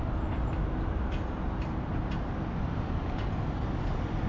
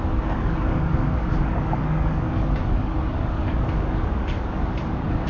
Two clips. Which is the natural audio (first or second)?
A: first